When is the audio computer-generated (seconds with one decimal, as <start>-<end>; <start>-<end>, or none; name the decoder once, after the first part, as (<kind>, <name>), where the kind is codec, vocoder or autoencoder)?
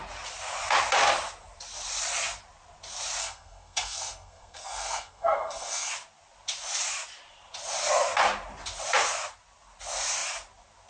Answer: 3.2-5.9 (codec, SNAC)